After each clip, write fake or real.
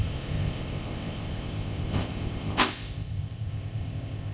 fake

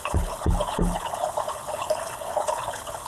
fake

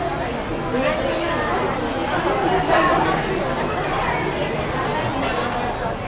real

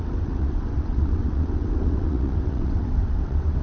fake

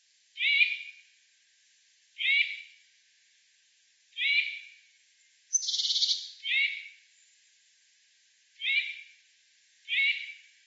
real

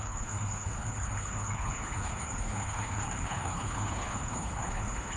fake